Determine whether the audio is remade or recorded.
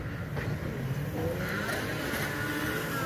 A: recorded